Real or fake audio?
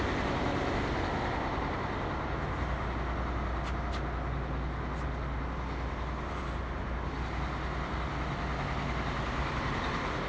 real